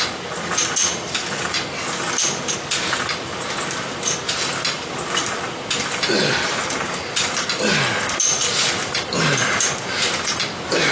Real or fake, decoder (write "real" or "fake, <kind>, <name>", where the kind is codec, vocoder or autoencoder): real